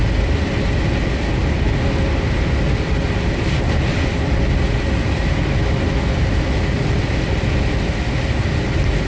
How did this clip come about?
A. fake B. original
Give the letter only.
B